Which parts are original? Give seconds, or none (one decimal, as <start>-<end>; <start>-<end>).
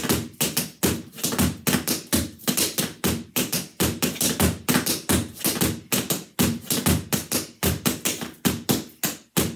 0.0-9.6